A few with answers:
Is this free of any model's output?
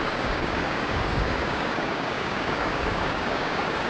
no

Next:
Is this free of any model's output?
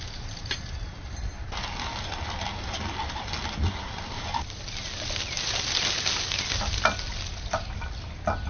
yes